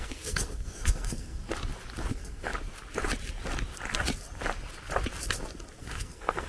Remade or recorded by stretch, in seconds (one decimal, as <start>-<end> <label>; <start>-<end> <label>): 0.0-1.4 remade; 1.4-2.1 recorded; 2.1-2.5 remade; 2.5-5.8 recorded; 5.8-6.5 remade